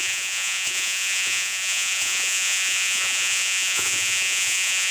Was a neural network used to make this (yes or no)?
yes